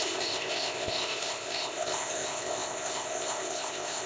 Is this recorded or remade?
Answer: remade